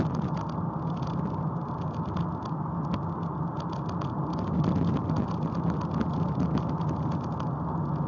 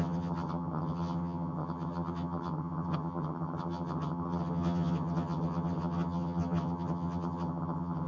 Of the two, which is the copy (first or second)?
second